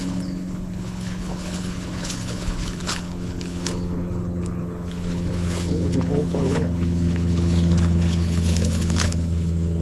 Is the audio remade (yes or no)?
yes